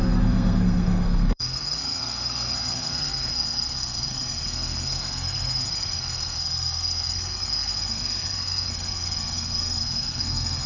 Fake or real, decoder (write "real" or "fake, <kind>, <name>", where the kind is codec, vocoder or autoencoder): fake, codec, SNAC